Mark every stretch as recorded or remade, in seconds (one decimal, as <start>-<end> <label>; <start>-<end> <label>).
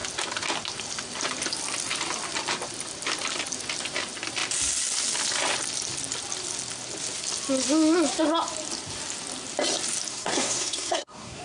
0.0-10.1 recorded; 10.1-11.4 remade